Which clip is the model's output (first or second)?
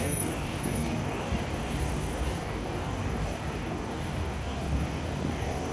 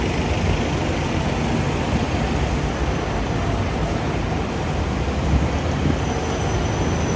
first